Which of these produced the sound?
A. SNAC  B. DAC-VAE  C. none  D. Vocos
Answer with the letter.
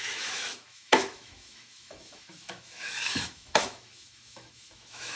B